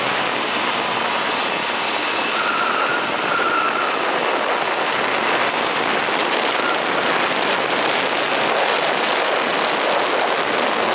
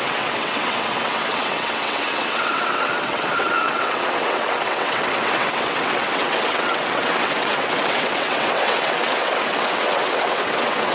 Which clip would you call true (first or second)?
first